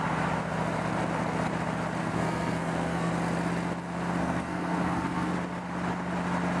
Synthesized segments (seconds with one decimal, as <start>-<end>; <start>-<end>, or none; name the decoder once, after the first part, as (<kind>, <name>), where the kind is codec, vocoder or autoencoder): 2.0-3.1 (codec, SNAC); 4.2-5.3